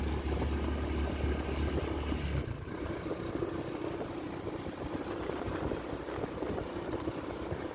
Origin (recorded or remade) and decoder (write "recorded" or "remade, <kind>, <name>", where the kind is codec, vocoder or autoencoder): recorded